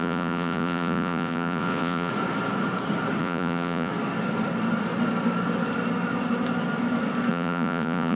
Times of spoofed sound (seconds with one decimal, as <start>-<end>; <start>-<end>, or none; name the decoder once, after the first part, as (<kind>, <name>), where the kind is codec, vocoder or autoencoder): 0.0-2.1 (vocoder, Vocos); 3.2-3.9; 7.3-8.1